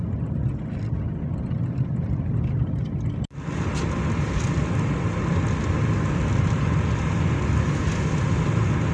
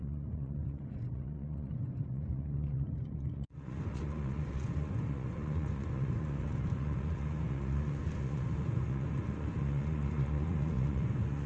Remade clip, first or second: second